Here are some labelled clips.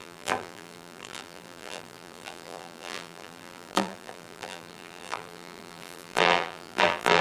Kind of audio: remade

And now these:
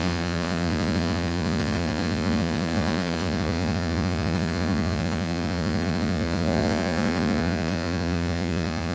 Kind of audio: remade